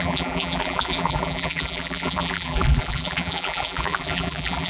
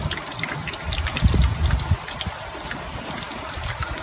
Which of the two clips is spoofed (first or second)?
first